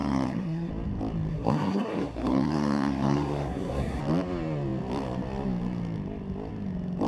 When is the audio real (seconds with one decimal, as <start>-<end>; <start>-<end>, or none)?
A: 0.7-1.3; 4.0-7.1